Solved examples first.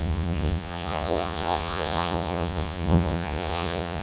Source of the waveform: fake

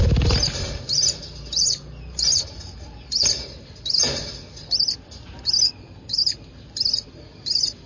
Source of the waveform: real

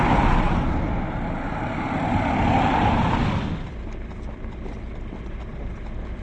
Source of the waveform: real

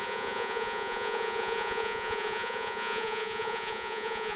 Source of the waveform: fake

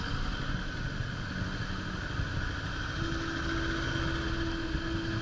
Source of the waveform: real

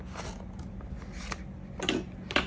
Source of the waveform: real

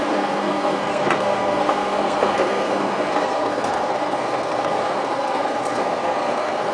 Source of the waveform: fake